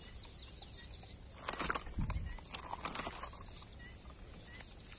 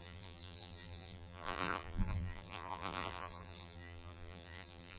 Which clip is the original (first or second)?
first